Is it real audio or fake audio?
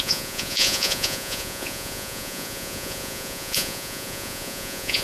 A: fake